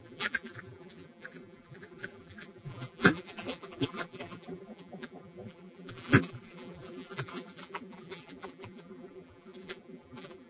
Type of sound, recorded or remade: remade